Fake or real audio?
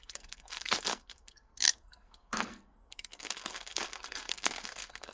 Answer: fake